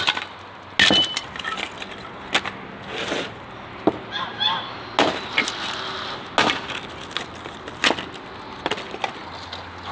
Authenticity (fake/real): real